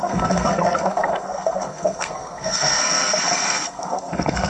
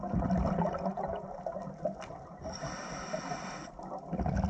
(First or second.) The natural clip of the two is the second